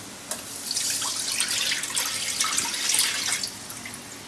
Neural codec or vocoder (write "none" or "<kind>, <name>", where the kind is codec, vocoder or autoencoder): none